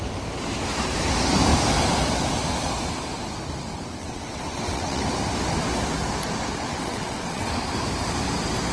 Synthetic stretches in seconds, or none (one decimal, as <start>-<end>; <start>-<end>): 4.0-5.0; 6.7-7.5